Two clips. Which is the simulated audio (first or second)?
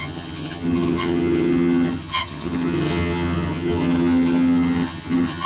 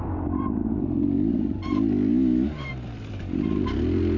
first